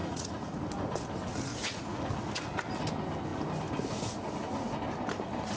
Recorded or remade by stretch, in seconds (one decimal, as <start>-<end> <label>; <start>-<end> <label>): 0.0-0.6 remade; 0.6-1.5 recorded; 1.5-2.0 remade; 2.0-5.6 recorded